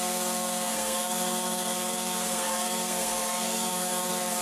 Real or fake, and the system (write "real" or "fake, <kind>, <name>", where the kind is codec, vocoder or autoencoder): fake, codec, SNAC